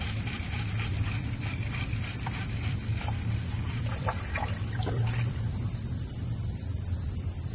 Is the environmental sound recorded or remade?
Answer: remade